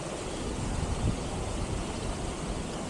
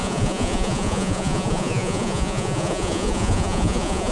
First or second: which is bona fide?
first